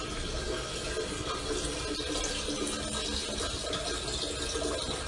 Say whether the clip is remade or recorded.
recorded